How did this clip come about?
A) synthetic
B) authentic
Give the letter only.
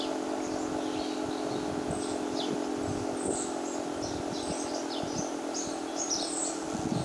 B